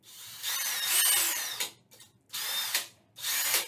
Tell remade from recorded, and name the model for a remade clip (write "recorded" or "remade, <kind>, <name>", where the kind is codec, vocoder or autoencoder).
recorded